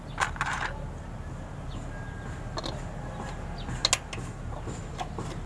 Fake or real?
real